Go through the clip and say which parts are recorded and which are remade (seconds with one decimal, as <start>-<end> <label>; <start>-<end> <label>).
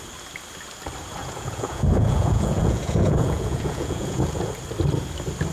0.0-1.2 recorded; 1.2-4.5 remade; 4.5-5.5 recorded